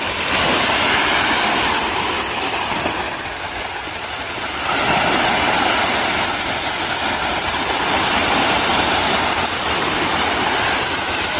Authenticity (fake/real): real